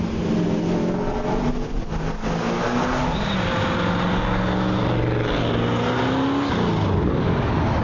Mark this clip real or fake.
real